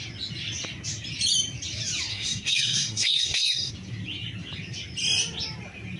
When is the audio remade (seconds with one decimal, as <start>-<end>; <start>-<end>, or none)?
2.1-3.7